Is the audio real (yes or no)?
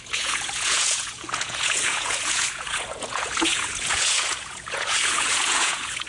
no